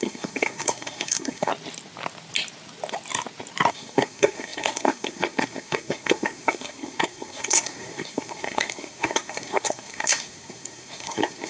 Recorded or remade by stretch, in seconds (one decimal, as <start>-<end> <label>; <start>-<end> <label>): 0.0-1.5 remade; 1.5-3.7 recorded; 3.7-11.5 remade